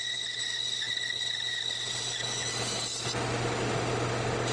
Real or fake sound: real